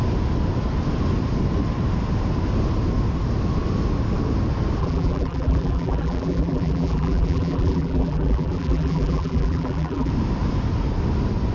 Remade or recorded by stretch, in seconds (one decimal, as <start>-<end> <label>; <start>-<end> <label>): 0.0-4.8 recorded; 4.8-10.1 remade; 10.1-11.5 recorded